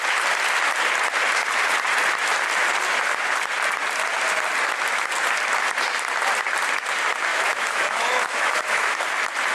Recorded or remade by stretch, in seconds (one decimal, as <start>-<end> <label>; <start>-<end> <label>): 0.0-7.3 recorded; 7.3-9.0 remade; 9.0-9.5 recorded

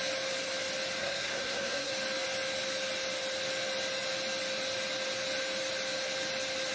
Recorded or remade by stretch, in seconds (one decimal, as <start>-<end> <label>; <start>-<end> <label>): 0.0-1.0 recorded; 1.0-1.9 remade; 1.9-6.7 recorded

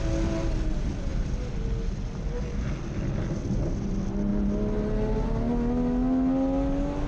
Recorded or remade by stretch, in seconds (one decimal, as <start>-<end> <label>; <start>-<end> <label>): 0.0-7.1 recorded

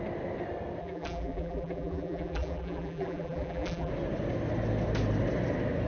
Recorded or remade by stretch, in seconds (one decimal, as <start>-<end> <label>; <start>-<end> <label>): 0.0-0.8 recorded; 0.8-3.9 remade; 3.9-5.9 recorded

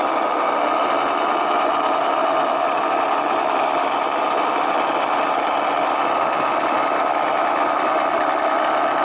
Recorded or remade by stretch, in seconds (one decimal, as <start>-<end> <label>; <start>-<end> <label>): 0.0-9.0 recorded

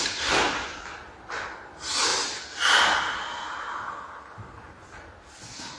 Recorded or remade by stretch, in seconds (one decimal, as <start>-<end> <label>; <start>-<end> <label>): 0.0-5.8 recorded